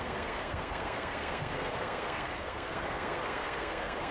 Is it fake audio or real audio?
fake